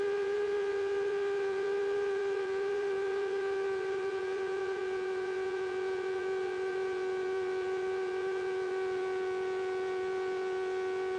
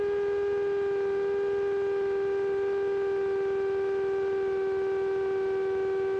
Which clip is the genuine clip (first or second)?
second